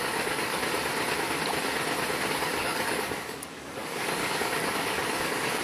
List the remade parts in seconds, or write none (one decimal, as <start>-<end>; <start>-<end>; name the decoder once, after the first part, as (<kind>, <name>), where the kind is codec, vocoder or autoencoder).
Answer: 0.0-0.6 (codec, DAC); 2.3-5.6